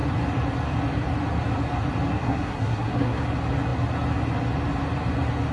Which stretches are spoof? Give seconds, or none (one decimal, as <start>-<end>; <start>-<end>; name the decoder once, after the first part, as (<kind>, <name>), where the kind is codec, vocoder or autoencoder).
2.1-3.2 (codec, SNAC)